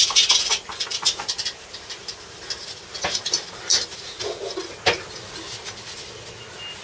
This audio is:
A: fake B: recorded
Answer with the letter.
B